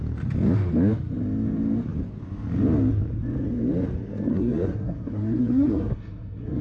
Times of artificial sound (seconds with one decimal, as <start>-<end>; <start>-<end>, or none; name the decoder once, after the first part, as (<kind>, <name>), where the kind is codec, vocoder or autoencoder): 4.3-6.6 (codec, SNAC)